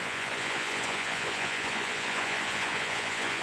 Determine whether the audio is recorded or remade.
remade